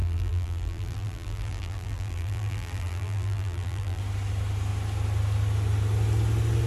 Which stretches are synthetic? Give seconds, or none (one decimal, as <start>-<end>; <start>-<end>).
0.0-4.0